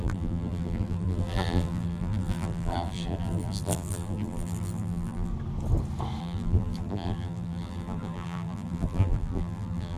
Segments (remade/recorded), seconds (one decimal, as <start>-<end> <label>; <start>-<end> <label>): 0.0-5.3 remade; 5.3-6.2 recorded; 6.2-10.0 remade